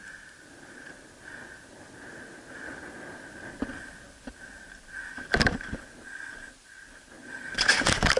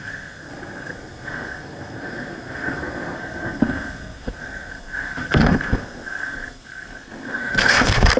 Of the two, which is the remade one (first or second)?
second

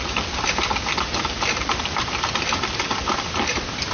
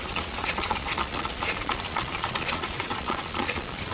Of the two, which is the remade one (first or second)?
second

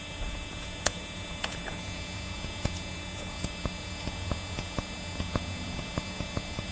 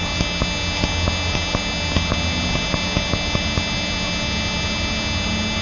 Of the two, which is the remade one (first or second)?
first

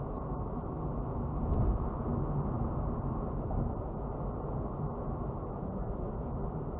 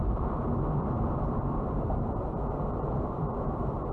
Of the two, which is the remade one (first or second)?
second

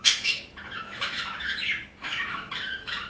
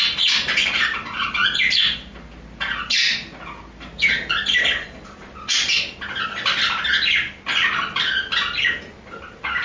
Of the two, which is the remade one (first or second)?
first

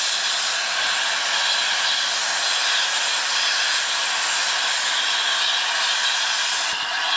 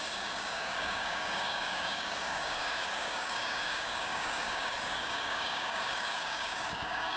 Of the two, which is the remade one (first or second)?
second